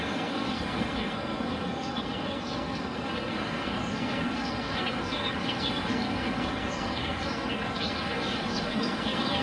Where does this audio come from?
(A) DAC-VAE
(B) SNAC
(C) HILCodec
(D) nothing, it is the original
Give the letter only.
B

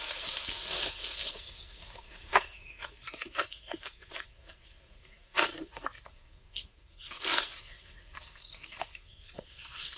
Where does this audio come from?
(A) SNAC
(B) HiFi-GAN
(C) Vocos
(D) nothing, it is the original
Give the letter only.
A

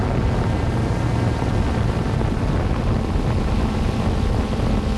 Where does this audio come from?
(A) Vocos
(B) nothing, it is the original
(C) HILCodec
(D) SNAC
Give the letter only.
B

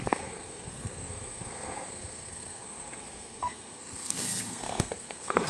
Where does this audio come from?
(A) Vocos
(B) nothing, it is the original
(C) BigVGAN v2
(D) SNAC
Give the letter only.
D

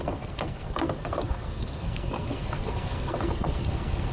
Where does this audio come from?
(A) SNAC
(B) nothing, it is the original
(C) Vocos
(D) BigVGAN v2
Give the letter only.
A